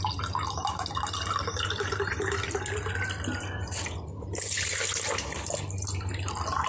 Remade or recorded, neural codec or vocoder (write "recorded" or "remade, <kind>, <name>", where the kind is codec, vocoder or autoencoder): recorded